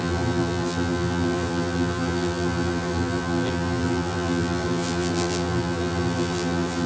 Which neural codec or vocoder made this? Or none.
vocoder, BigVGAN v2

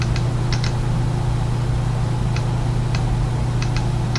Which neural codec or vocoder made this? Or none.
none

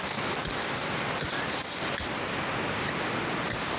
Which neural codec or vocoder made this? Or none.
none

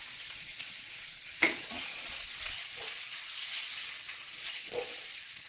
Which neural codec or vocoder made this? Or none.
vocoder, Vocos